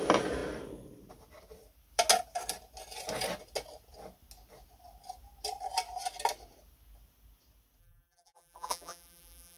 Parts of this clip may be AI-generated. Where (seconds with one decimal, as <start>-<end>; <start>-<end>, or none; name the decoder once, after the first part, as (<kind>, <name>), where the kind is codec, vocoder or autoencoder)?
7.8-9.6 (vocoder, BigVGAN v2)

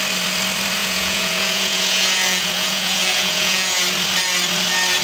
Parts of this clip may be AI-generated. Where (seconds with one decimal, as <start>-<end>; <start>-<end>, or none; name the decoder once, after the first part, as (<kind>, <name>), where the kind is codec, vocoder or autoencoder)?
0.8-3.8 (vocoder, Vocos)

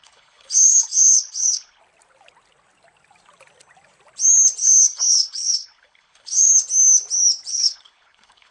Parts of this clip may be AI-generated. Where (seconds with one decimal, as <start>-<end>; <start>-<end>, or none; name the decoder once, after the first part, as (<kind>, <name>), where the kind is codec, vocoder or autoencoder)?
0.0-1.8 (codec, HILCodec); 4.6-6.5; 7.5-8.5

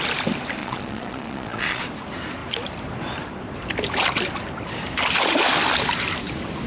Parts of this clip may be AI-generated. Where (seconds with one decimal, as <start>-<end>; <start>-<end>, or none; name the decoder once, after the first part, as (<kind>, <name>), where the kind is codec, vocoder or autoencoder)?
0.6-1.8 (vocoder, Vocos)

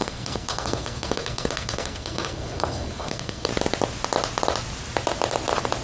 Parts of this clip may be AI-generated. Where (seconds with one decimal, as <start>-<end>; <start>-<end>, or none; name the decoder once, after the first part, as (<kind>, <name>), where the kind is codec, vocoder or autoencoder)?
0.0-3.5 (codec, SNAC)

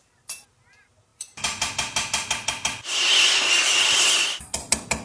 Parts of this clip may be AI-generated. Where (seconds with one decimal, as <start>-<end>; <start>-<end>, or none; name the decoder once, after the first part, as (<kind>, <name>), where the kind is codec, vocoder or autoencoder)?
none

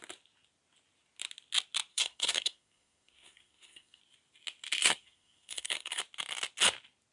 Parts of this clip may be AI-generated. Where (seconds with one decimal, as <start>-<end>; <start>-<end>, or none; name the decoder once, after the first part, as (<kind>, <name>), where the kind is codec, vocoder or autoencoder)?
1.9-4.0 (codec, SNAC); 4.8-6.0

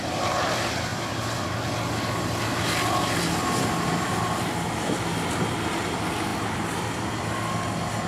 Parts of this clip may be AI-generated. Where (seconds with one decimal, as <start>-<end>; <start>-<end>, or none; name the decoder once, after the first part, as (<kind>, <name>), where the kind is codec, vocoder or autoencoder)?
none